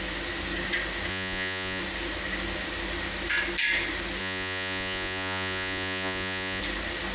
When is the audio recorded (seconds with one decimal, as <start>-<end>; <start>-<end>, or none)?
0.0-1.1; 1.8-4.2; 6.6-7.1

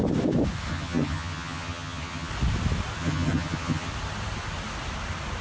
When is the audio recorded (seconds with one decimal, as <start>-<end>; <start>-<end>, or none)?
0.0-0.7; 2.3-3.0; 3.9-5.4